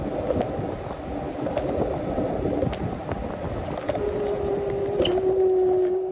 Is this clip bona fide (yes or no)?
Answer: yes